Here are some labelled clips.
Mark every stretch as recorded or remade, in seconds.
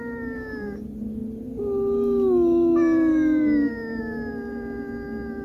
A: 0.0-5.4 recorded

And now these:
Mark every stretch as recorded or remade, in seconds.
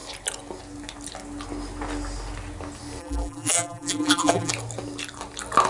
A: 0.0-3.0 recorded; 3.0-4.5 remade; 4.5-5.7 recorded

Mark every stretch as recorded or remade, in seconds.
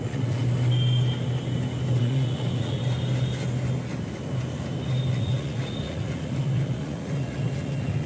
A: 0.0-0.4 remade; 0.4-2.0 recorded; 2.0-2.8 remade; 2.8-5.1 recorded; 5.1-8.1 remade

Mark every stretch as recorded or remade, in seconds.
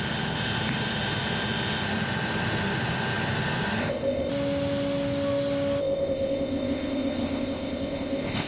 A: 0.0-3.8 recorded; 3.8-4.3 remade; 4.3-5.8 recorded; 5.8-8.5 remade